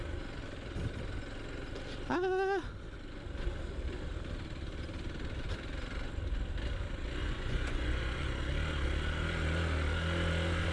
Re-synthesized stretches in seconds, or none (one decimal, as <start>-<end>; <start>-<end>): 7.2-8.4